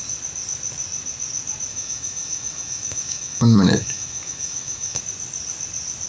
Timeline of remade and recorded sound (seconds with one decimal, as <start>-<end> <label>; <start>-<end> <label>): 0.0-1.7 recorded; 1.7-5.0 remade; 5.0-6.1 recorded